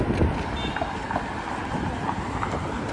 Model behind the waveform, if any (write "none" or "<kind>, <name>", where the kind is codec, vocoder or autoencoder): none